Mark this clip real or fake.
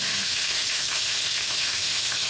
fake